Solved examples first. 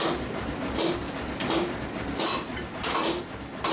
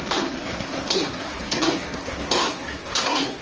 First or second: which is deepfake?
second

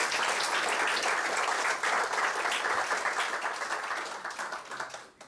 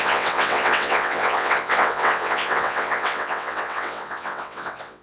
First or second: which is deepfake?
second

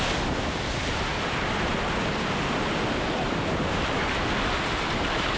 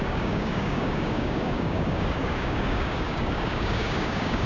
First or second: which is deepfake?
second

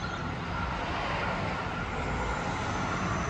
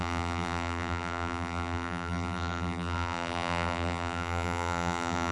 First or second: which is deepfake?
second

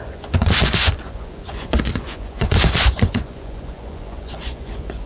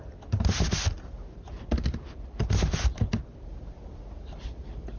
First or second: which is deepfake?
first